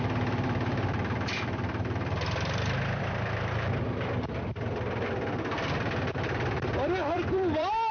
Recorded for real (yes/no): no